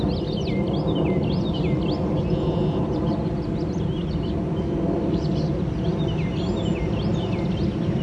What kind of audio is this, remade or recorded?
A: recorded